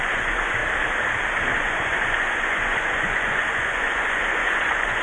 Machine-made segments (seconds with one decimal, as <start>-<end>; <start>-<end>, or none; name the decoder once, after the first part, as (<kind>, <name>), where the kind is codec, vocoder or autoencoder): 0.0-0.6 (vocoder, Vocos); 1.6-5.0